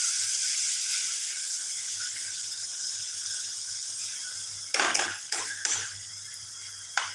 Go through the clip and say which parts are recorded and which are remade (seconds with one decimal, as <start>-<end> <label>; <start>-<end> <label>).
0.0-1.2 recorded; 1.2-4.0 remade; 4.0-4.9 recorded; 4.9-6.1 remade; 6.1-7.1 recorded